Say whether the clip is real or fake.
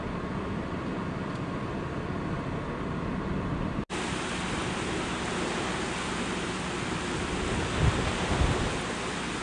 real